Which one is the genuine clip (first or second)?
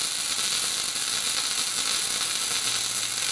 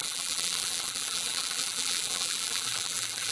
first